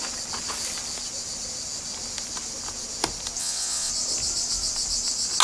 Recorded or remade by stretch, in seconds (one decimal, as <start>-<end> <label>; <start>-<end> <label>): 0.0-3.4 recorded; 3.4-3.9 remade; 3.9-5.4 recorded